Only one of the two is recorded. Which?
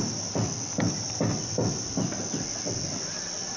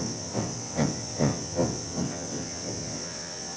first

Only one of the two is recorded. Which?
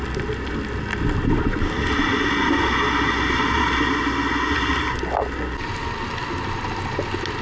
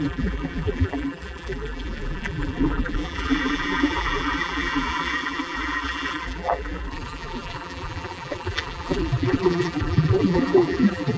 first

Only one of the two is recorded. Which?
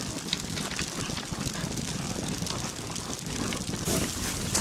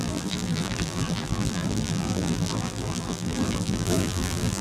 first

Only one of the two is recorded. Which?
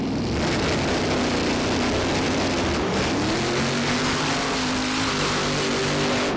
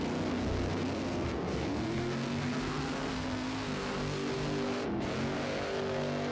first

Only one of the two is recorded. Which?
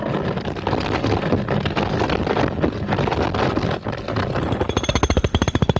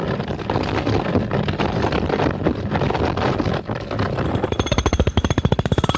first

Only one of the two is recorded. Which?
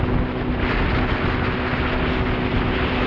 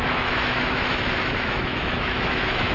first